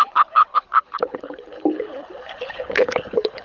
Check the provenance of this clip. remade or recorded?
remade